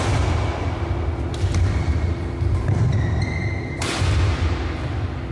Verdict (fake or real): real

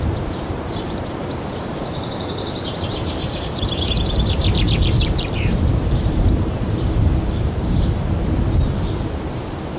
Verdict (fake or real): fake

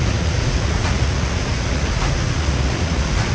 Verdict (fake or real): fake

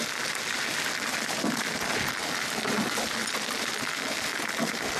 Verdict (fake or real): real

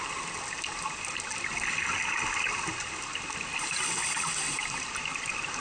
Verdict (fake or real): real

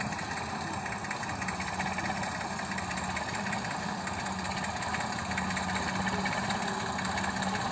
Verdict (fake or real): real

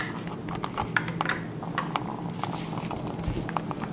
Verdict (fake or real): real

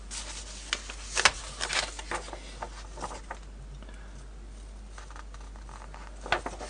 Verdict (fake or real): real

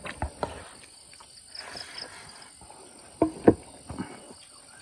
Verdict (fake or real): real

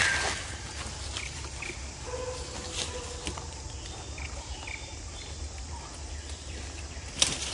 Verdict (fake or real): real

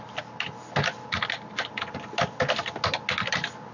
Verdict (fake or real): real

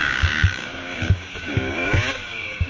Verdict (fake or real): fake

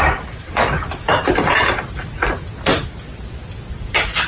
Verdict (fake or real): real